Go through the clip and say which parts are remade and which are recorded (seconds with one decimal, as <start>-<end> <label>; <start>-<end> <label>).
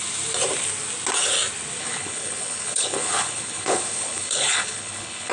0.0-1.8 recorded; 1.8-5.3 remade